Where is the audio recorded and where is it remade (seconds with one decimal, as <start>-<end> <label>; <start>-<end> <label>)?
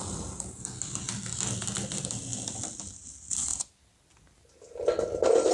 0.0-2.3 recorded; 2.3-2.8 remade; 2.8-3.5 recorded; 3.5-4.2 remade; 4.2-5.5 recorded